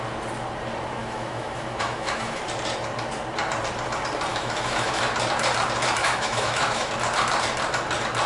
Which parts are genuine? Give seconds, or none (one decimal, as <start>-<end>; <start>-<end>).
0.0-1.0; 2.4-4.3; 5.0-6.0; 6.9-8.3